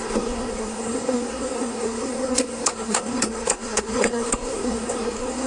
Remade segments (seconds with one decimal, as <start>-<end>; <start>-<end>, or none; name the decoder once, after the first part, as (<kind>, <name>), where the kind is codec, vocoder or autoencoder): 0.0-5.5 (codec, SNAC)